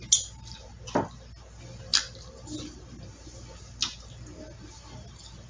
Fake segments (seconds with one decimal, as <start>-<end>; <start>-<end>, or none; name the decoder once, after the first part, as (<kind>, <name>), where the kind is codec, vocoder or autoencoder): none